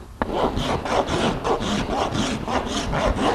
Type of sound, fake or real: real